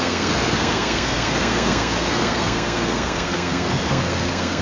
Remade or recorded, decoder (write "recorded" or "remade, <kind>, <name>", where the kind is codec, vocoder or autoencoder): remade, codec, SNAC